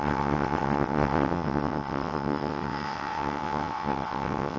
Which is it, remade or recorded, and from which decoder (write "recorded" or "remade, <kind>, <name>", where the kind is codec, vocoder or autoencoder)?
remade, vocoder, WaveNeXt